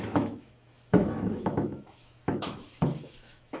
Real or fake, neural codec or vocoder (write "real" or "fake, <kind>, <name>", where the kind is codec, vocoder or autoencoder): fake, autoencoder, DAC-VAE